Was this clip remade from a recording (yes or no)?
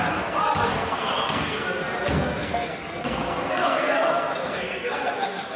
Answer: yes